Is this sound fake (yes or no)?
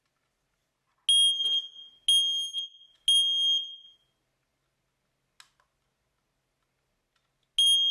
no